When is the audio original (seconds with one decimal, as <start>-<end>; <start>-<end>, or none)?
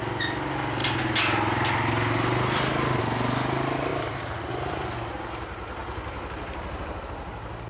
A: 0.0-5.8; 7.0-7.7